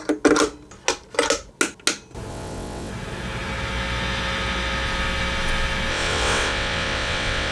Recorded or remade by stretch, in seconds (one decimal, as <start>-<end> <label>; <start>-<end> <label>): 0.0-2.3 recorded; 2.3-2.9 remade; 2.9-5.9 recorded; 5.9-7.5 remade